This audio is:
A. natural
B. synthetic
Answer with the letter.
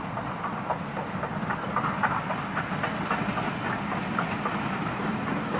A